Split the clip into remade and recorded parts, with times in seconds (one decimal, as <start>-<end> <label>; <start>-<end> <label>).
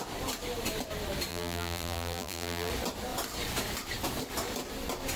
0.0-1.3 recorded; 1.3-2.7 remade; 2.7-5.2 recorded